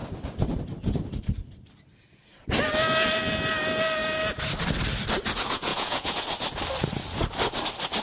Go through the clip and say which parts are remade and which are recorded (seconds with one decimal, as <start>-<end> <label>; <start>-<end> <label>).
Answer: 0.0-5.7 recorded; 5.7-6.2 remade; 6.2-8.0 recorded

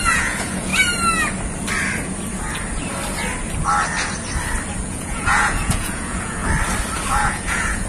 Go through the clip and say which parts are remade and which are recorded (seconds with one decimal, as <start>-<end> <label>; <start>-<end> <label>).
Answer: 0.0-0.7 remade; 0.7-4.8 recorded; 4.8-6.4 remade; 6.4-7.1 recorded; 7.1-7.9 remade

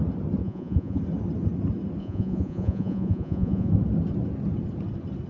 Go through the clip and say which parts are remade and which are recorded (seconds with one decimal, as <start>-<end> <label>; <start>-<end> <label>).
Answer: 0.0-0.4 recorded; 0.4-1.0 remade; 1.0-2.0 recorded; 2.0-3.7 remade; 3.7-5.3 recorded